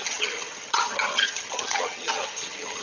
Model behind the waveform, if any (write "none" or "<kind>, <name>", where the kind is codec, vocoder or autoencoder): vocoder, HiFi-GAN